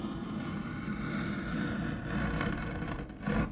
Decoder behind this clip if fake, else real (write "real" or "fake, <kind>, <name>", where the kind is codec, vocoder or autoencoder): real